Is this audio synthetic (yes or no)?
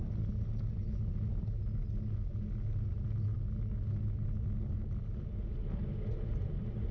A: no